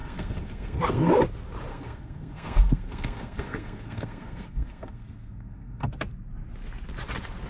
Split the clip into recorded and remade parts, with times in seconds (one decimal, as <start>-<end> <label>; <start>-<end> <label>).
0.0-1.1 remade; 1.1-1.7 recorded; 1.7-5.9 remade; 5.9-7.5 recorded